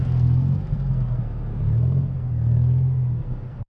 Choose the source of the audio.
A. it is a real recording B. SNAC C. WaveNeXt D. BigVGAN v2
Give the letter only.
B